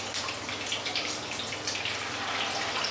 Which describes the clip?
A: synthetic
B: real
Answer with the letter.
B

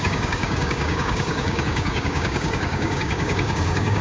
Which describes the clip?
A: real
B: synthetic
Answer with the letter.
B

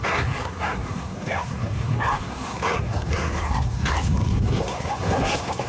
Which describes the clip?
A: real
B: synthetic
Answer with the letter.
B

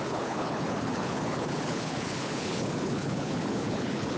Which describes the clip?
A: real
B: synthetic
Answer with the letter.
B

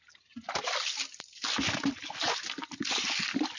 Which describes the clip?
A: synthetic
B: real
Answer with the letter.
B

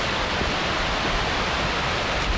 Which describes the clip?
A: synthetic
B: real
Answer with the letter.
B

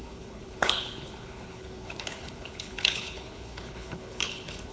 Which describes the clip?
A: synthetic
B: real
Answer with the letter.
A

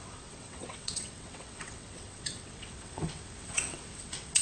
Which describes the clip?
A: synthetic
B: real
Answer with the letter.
A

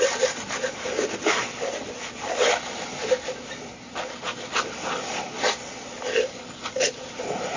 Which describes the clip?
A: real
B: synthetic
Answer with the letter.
A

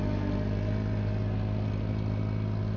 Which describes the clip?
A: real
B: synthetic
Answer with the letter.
A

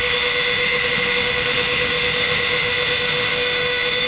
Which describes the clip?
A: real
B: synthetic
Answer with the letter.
B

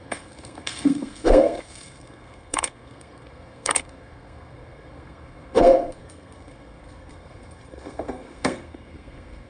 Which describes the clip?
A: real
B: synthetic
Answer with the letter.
B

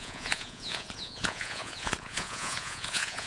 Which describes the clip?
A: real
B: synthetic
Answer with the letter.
B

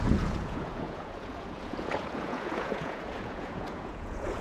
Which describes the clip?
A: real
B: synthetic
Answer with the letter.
B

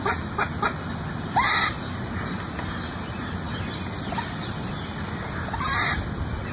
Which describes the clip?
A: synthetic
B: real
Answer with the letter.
B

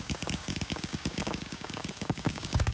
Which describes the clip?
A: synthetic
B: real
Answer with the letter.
A